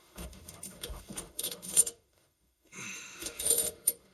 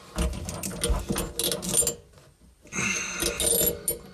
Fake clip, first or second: first